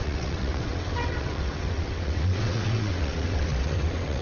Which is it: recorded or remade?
remade